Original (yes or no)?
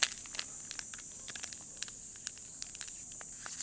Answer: yes